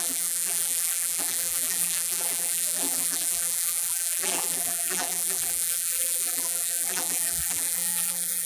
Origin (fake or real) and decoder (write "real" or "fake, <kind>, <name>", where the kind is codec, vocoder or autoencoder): fake, vocoder, BigVGAN v2